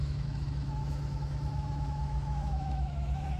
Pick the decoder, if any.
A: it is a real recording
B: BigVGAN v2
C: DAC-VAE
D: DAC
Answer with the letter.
C